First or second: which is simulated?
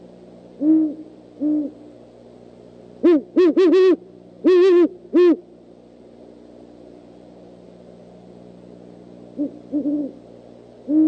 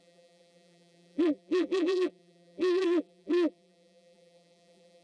second